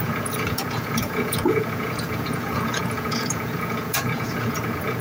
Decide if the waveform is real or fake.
fake